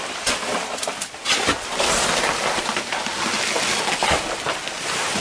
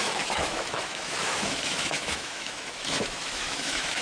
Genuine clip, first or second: first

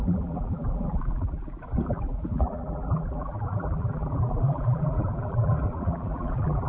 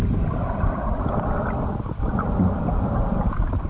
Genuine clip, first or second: second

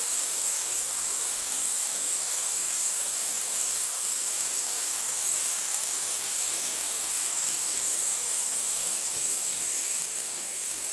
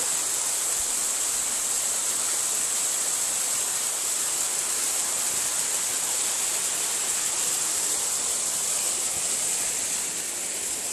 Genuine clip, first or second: second